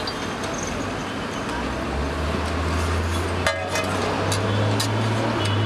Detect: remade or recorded recorded